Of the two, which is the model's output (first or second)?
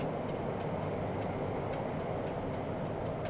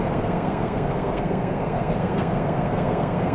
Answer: second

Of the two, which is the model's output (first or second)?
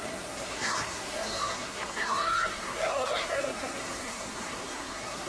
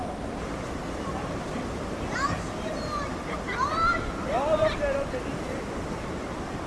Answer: first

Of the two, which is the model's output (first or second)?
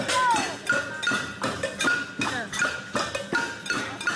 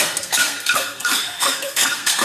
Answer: second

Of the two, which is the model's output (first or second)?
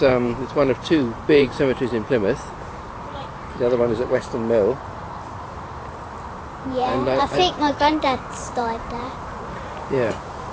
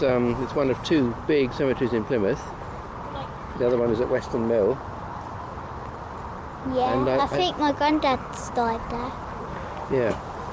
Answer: first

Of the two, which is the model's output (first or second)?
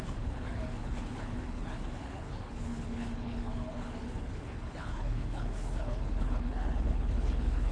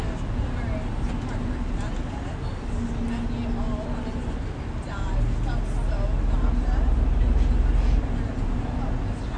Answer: first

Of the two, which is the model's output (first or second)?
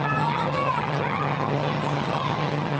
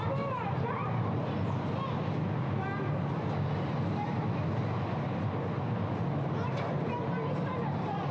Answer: first